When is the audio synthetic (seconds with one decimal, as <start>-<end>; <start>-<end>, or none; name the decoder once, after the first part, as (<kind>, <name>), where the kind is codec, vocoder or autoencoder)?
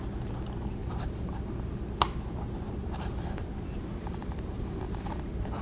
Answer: 0.8-1.5 (vocoder, BigVGAN v2); 2.8-3.4; 4.0-5.1